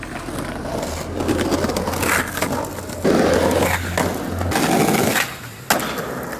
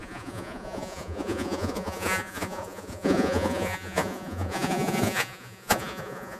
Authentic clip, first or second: first